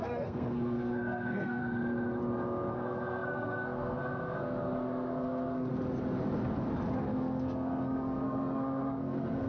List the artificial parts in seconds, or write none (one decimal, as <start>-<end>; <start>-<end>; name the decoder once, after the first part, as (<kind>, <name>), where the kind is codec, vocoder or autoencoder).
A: 0.0-1.6 (codec, SNAC); 2.7-5.7; 7.0-9.5